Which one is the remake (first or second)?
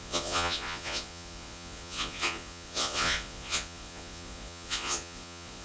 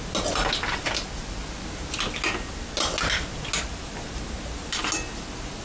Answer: first